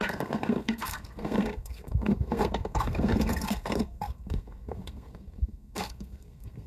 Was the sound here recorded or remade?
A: remade